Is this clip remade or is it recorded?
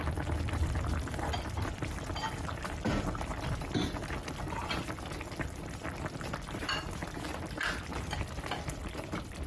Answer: recorded